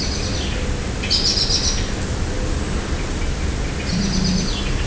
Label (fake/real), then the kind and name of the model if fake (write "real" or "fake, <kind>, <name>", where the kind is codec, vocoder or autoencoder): real